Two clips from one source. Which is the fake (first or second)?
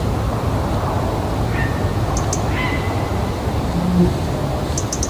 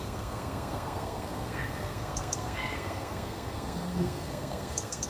second